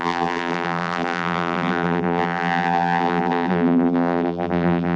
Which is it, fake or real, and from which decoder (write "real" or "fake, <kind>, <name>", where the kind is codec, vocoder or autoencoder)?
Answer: fake, vocoder, BigVGAN v2